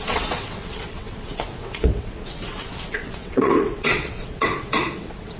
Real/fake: fake